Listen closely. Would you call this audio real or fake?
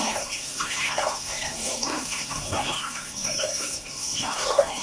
fake